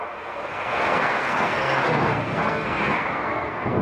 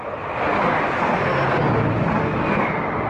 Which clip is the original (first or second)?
second